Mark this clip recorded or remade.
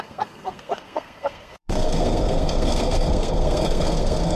remade